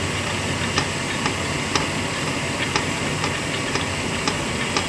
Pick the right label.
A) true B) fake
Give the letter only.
A